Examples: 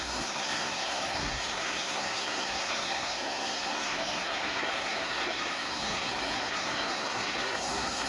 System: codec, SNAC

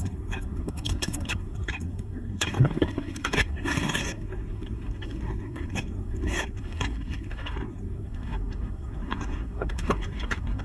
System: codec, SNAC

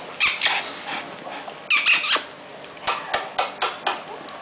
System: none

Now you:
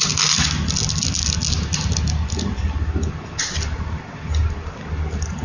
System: none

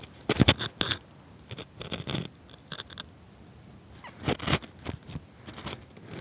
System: none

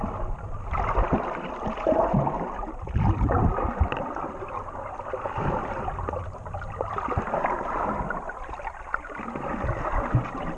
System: none